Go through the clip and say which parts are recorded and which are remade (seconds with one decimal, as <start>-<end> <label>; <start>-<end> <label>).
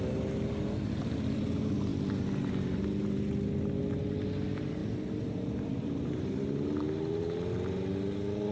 0.0-4.8 recorded; 4.8-6.1 remade; 6.1-8.5 recorded